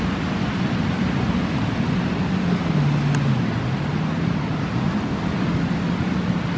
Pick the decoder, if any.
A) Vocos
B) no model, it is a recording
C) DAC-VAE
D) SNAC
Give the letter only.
B